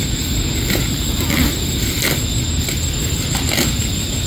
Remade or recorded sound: recorded